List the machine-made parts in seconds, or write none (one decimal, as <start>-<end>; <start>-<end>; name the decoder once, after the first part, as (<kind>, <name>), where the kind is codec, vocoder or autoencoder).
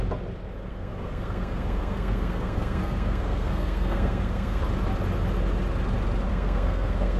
0.7-4.6 (codec, SNAC); 6.3-7.2